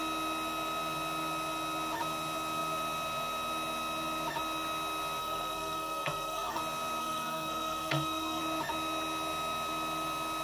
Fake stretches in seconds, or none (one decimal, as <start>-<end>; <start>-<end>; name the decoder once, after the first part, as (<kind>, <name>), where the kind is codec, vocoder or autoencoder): 5.2-6.6 (codec, SNAC); 7.0-8.4